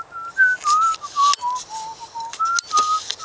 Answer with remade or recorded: recorded